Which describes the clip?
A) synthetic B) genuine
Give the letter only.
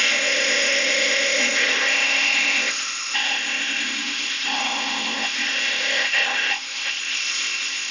A